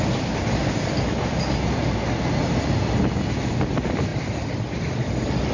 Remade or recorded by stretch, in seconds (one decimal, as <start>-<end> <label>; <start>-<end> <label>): 0.0-5.5 recorded